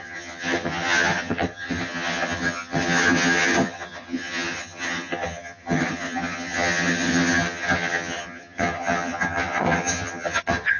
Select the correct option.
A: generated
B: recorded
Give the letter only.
A